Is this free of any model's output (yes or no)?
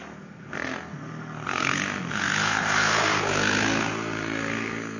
no